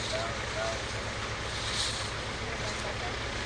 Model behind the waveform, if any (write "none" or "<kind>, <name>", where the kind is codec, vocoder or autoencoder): none